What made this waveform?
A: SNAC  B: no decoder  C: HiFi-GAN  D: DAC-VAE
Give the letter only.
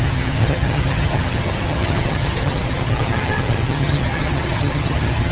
C